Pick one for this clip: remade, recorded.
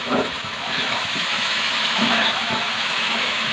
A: remade